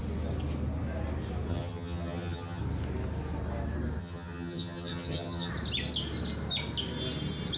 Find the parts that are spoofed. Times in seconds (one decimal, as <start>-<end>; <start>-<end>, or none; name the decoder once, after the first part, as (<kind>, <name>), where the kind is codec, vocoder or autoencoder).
1.5-2.6 (vocoder, HiFi-GAN); 4.0-5.5

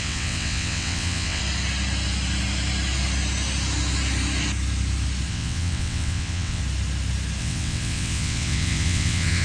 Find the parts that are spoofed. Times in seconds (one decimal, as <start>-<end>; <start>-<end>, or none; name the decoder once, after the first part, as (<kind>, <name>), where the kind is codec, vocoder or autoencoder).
0.0-1.4 (vocoder, WaveNeXt); 5.3-6.6; 7.4-9.4

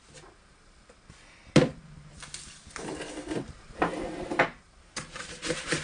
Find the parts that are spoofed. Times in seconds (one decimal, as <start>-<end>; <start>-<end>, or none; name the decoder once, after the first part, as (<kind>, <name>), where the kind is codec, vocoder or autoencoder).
3.3-4.4 (vocoder, BigVGAN v2)

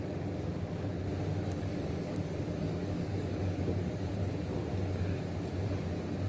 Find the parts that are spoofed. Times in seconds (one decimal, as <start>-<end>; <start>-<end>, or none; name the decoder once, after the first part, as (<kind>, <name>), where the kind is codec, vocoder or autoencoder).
1.3-4.1 (codec, DAC)

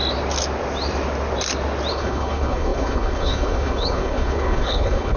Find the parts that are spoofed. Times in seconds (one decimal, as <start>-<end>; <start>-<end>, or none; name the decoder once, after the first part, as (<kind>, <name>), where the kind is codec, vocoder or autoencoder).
1.9-5.2 (codec, HILCodec)

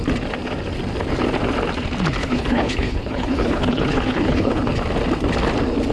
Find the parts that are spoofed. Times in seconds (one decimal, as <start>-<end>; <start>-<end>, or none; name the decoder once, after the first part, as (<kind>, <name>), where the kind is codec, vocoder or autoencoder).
2.2-4.6 (codec, HILCodec)

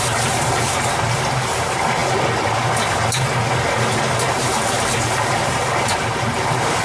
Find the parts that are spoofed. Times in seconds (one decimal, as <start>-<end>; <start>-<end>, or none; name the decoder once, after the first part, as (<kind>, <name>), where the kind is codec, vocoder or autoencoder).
none